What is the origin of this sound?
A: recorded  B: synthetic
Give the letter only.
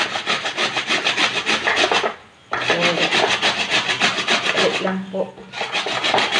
A